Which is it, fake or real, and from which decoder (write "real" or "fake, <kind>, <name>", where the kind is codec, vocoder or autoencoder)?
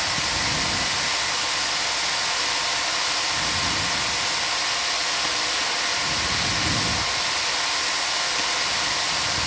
real